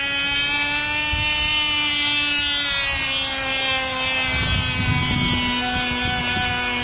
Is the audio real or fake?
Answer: real